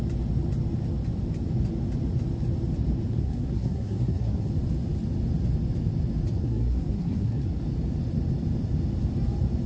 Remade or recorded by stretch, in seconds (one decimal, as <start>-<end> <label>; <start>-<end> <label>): 0.0-3.1 recorded; 3.1-4.5 remade; 4.5-6.4 recorded; 6.4-7.6 remade; 7.6-9.7 recorded